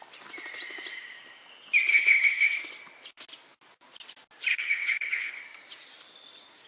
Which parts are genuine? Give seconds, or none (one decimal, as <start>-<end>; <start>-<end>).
0.0-1.9; 2.6-4.5; 5.4-6.7